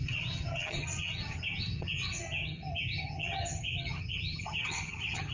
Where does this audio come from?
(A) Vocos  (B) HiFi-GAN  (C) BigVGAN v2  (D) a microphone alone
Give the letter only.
B